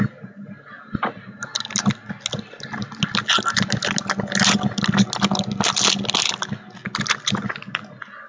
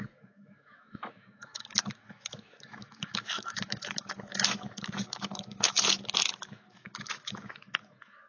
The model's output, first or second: second